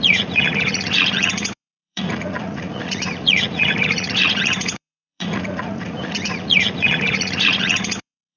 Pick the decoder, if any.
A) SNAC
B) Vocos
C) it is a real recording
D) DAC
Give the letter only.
B